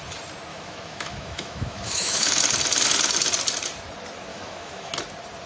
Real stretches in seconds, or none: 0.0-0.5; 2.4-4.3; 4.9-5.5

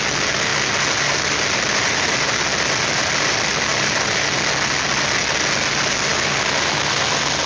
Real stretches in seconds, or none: 0.0-7.5

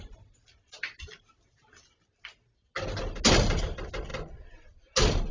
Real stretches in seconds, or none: 0.0-5.3

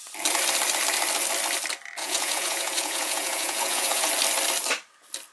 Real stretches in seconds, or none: 0.0-2.0; 4.1-5.3

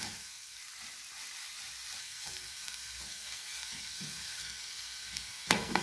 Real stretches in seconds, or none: 0.6-2.0

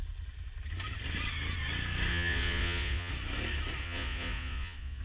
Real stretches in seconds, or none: 0.0-2.1; 3.1-3.8